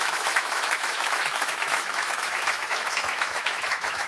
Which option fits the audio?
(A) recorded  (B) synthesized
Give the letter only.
B